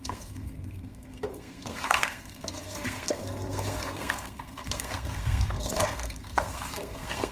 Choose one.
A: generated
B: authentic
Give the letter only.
A